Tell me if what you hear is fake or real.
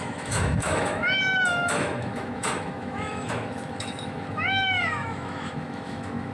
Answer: fake